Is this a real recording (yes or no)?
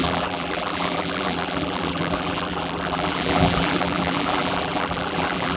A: no